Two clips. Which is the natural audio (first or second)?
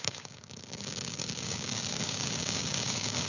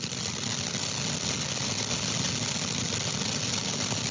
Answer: second